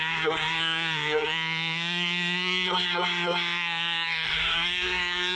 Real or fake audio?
fake